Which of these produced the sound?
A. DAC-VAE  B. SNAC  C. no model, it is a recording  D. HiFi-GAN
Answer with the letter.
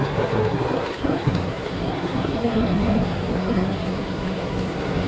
B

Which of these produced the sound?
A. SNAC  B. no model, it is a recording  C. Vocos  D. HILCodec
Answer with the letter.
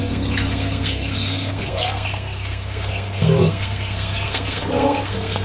A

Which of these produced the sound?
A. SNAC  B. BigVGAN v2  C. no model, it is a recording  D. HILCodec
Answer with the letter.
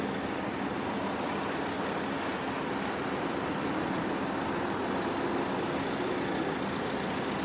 C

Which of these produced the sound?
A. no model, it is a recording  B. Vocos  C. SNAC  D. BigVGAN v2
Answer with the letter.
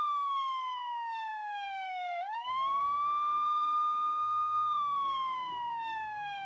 C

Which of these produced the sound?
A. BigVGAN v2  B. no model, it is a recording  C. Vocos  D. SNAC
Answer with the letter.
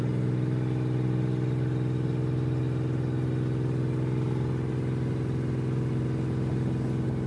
B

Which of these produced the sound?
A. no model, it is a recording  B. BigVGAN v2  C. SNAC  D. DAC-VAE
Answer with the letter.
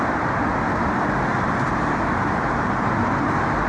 A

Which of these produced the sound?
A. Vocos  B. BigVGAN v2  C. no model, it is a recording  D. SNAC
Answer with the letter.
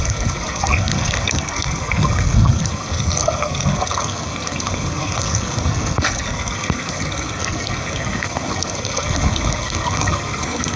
D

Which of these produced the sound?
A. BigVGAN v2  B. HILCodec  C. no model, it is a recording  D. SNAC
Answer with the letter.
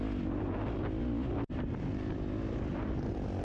C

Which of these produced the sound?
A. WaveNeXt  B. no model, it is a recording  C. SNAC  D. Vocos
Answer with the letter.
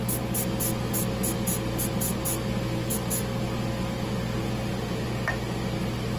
B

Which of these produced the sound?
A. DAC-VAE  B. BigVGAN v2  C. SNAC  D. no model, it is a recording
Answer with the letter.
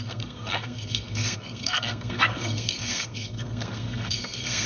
C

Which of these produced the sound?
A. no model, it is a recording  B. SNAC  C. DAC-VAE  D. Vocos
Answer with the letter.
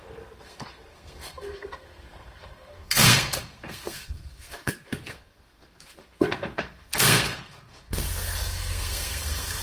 B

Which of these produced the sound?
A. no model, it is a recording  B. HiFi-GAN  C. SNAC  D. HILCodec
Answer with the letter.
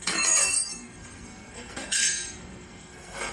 C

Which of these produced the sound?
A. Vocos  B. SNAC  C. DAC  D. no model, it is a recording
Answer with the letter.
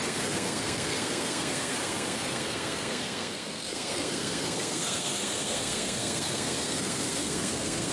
B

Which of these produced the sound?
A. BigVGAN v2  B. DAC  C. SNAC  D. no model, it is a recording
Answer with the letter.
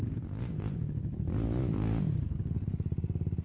D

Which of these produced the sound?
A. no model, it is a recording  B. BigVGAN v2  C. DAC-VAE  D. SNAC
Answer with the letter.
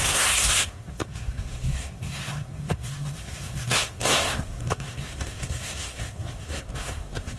D